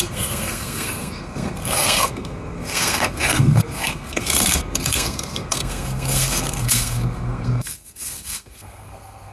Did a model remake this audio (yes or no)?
yes